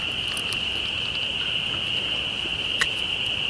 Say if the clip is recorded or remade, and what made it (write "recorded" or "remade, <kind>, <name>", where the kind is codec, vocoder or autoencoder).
recorded